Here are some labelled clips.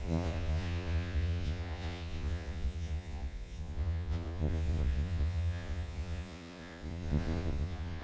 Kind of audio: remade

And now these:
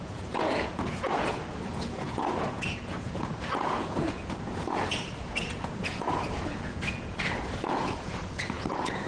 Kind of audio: remade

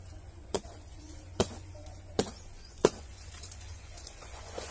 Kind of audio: remade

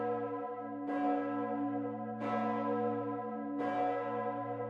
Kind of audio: recorded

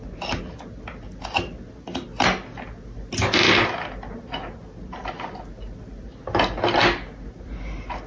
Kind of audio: recorded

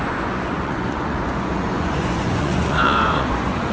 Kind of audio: remade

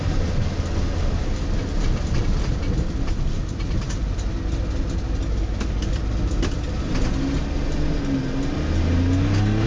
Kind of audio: recorded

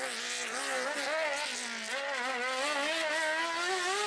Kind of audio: recorded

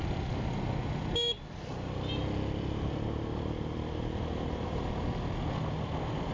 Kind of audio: recorded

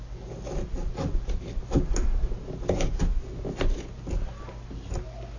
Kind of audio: recorded